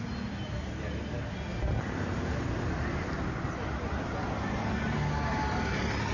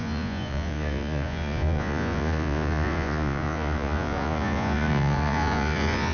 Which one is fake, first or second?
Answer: second